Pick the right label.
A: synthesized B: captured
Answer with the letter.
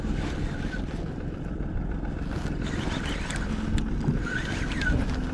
B